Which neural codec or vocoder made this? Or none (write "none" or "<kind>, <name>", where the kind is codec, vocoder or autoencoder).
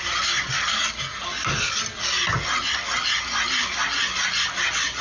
none